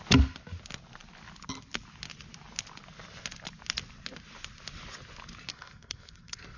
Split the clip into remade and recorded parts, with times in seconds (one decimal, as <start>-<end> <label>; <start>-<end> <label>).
0.0-5.5 recorded; 5.5-6.6 remade